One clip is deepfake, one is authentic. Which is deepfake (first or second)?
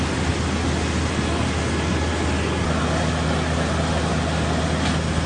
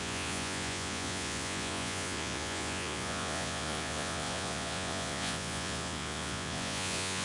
second